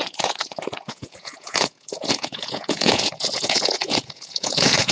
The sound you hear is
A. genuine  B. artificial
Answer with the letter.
B